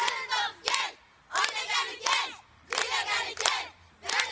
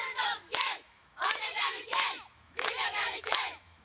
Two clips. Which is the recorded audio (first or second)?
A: first